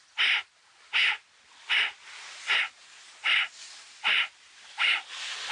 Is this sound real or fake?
real